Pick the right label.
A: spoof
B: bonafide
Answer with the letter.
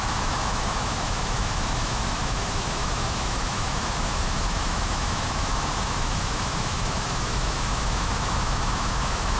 A